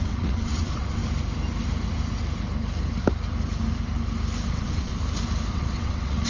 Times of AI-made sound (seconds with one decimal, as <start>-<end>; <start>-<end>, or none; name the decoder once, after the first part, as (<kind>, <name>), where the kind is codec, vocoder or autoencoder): 0.0-1.0 (vocoder, WaveNeXt); 4.5-4.9; 5.5-6.3